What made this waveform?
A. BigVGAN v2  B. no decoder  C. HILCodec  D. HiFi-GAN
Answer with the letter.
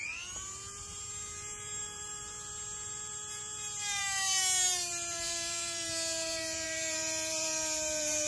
A